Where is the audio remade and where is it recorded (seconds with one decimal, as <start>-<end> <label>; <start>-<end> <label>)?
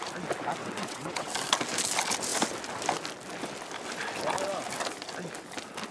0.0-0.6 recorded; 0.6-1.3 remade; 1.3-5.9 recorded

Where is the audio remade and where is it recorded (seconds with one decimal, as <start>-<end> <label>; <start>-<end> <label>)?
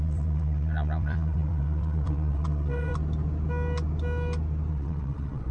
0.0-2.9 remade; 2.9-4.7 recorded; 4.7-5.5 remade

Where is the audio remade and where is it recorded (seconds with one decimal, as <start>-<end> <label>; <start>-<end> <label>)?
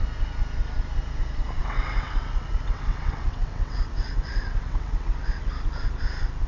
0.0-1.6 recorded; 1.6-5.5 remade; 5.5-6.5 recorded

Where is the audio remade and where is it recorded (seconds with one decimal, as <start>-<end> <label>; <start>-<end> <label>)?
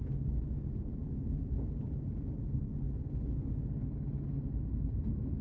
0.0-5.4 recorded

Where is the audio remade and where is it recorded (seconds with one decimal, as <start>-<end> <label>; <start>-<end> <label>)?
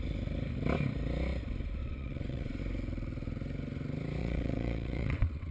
0.0-1.8 recorded; 1.8-2.6 remade; 2.6-4.2 recorded; 4.2-5.5 remade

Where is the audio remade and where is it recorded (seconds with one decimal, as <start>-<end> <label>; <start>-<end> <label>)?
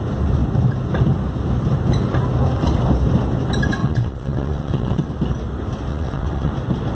0.0-3.8 recorded; 3.8-5.1 remade; 5.1-5.9 recorded; 5.9-6.5 remade; 6.5-6.9 recorded